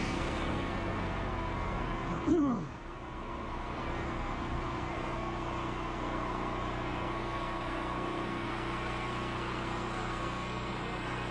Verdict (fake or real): fake